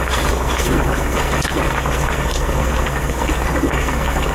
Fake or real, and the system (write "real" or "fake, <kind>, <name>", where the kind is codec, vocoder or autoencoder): fake, codec, SNAC